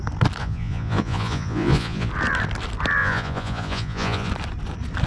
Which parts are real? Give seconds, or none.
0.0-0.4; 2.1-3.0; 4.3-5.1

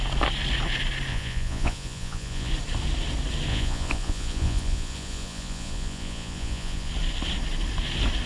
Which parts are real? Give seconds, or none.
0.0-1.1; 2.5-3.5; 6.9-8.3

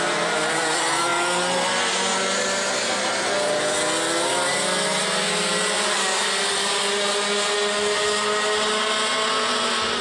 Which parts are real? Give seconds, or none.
0.0-10.0

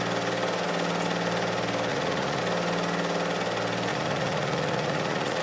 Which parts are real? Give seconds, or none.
0.0-1.9; 2.4-3.9

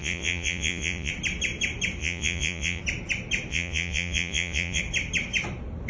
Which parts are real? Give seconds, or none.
1.1-2.0; 2.8-3.5; 4.8-5.9

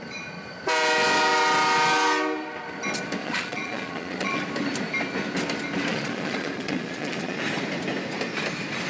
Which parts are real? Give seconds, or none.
0.0-3.2; 4.4-5.9; 7.4-8.9

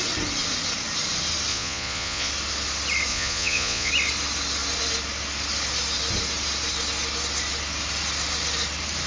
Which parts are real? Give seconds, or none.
0.0-1.5; 2.3-3.1; 3.9-9.1

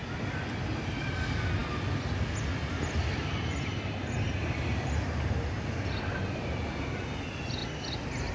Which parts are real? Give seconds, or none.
0.0-8.3